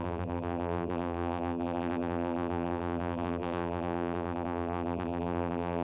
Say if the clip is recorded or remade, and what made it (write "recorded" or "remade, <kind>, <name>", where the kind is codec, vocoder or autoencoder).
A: remade, vocoder, BigVGAN v2